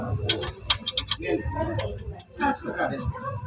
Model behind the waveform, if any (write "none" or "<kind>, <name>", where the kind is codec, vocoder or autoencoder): none